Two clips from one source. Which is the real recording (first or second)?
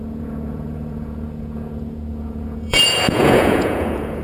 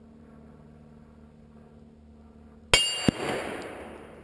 second